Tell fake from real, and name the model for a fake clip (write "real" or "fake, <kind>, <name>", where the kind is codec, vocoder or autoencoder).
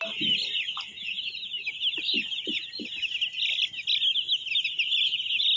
real